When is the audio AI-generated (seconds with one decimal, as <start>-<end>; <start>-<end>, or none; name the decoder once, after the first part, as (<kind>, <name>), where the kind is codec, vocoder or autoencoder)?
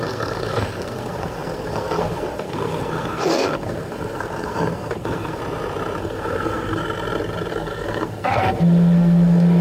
0.0-5.4 (codec, SNAC); 6.0-6.8; 7.5-9.6